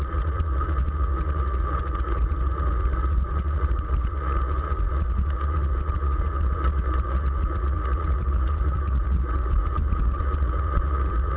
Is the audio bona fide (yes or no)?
no